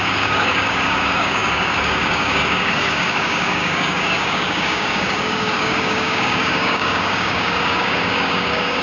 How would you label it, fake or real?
fake